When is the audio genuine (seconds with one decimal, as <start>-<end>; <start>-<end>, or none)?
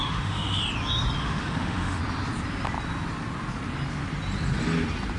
0.6-1.2; 2.0-5.2